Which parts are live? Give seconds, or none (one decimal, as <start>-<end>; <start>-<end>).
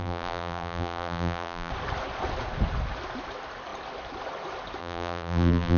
1.7-4.8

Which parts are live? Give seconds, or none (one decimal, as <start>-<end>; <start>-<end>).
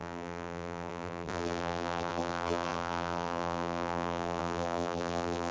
none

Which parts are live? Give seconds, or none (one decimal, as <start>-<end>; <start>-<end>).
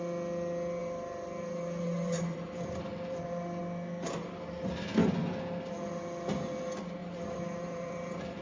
0.0-0.8; 2.7-7.0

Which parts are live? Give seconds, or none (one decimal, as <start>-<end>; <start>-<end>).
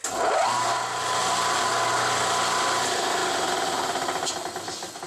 0.0-1.2; 1.7-3.2; 4.3-5.1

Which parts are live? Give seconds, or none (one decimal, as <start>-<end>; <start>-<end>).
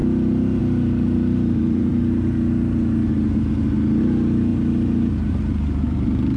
0.0-0.6; 1.9-4.0; 4.5-5.1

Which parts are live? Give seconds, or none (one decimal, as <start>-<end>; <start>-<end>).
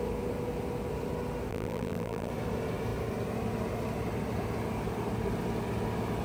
0.0-1.5; 2.3-6.2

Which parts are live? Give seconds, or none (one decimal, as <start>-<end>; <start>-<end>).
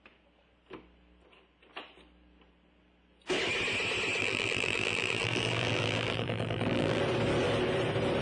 0.0-4.2; 7.0-8.2